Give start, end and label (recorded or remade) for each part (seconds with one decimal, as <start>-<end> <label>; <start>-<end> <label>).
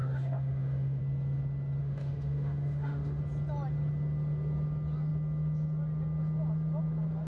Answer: 0.0-1.0 remade; 1.0-1.8 recorded; 1.8-3.2 remade; 3.2-7.3 recorded